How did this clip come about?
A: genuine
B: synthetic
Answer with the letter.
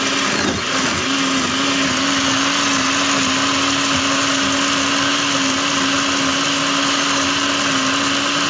A